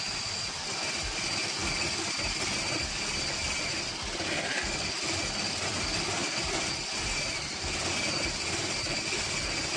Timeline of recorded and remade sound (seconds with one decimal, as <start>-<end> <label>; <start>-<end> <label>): 0.0-9.8 recorded